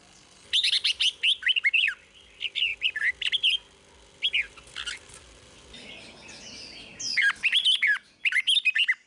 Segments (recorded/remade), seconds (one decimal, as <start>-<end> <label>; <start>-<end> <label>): 0.0-9.1 recorded